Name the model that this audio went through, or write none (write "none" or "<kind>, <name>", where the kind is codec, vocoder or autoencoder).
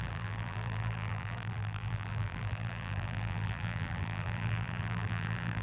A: vocoder, BigVGAN v2